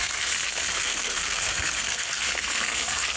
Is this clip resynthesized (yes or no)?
yes